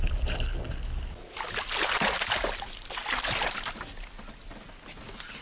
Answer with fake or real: real